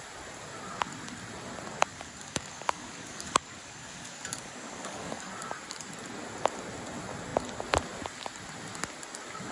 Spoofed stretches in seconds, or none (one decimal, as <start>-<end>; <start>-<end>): 1.9-5.3